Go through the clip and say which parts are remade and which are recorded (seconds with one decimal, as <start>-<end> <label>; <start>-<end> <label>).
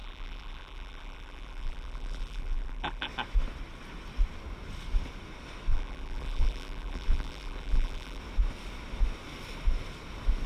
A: 0.0-3.1 remade; 3.1-5.7 recorded; 5.7-8.2 remade; 8.2-10.5 recorded